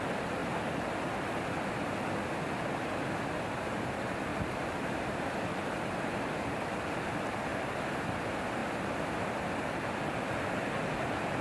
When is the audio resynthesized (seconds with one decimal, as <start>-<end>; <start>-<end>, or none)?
4.3-5.2